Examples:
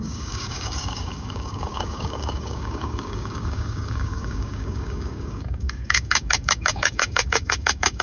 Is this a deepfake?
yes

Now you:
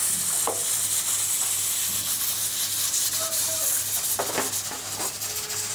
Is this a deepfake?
no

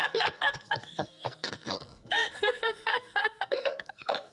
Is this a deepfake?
yes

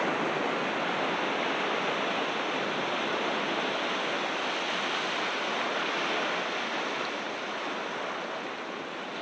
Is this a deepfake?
no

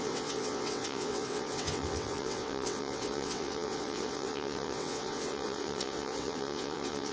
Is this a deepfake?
yes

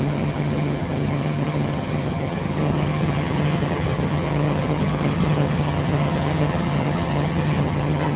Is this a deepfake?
yes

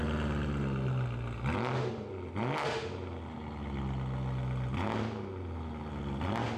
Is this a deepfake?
no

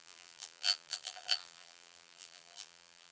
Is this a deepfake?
yes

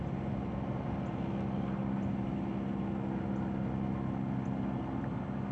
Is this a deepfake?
no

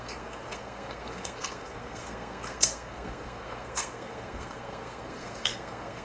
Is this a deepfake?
yes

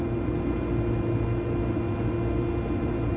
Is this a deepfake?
no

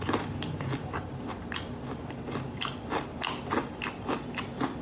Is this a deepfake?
no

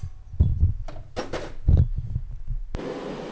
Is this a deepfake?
no